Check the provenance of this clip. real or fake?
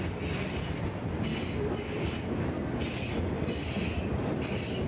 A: real